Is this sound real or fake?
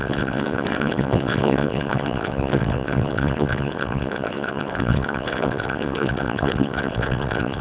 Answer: fake